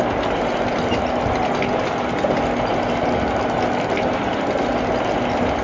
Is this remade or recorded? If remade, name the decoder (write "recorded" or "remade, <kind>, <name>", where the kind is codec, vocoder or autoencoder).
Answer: recorded